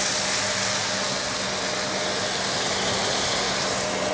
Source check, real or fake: real